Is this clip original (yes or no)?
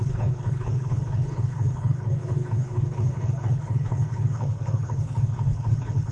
no